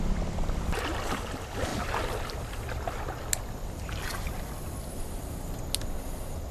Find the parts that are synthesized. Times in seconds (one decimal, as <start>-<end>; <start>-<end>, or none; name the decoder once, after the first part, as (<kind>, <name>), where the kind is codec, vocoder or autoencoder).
1.7-5.6 (vocoder, BigVGAN v2)